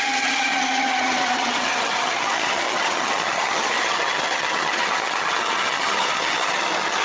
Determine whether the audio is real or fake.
fake